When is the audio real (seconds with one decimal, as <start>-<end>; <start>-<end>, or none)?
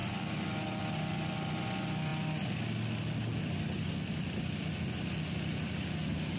0.0-6.4